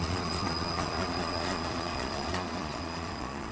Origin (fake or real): fake